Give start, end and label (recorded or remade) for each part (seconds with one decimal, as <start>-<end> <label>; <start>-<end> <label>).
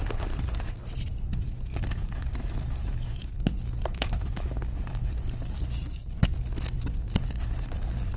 0.0-1.3 recorded; 1.3-2.3 remade; 2.3-2.8 recorded; 2.8-5.1 remade; 5.1-8.2 recorded